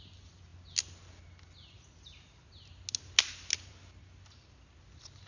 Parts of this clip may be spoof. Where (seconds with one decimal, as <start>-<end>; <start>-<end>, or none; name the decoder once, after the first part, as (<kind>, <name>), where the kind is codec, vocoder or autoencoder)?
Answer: none